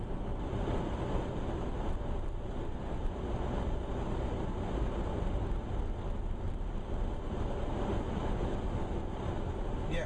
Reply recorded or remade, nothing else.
recorded